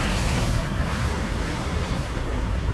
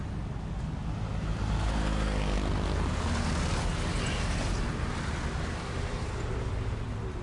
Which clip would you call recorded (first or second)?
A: second